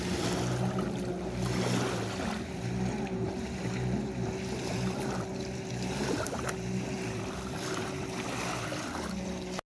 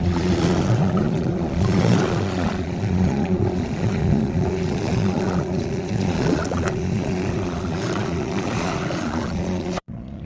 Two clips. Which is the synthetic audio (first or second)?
second